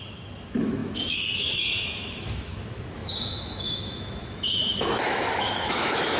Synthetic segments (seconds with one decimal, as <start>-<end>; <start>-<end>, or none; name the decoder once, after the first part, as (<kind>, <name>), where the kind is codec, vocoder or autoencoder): 0.0-6.2 (autoencoder, DAC-VAE)